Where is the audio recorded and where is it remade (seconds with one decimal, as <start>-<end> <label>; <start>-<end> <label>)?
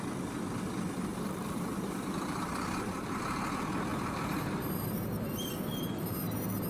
0.0-1.1 recorded; 1.1-3.2 remade; 3.2-3.9 recorded; 3.9-5.5 remade; 5.5-6.7 recorded